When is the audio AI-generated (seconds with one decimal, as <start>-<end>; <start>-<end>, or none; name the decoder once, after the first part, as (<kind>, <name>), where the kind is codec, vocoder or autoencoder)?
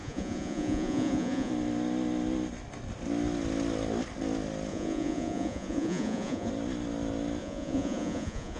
0.0-1.5 (vocoder, Vocos); 4.7-6.5; 7.4-8.6